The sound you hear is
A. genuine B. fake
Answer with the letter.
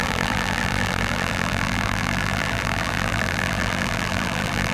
B